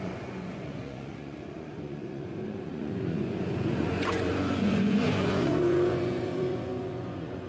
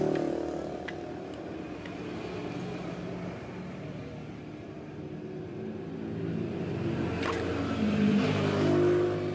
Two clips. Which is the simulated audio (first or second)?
first